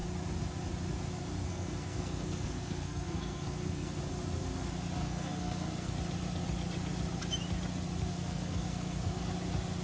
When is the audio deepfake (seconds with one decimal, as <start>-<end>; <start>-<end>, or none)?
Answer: 1.4-4.1; 5.0-5.9; 8.1-9.2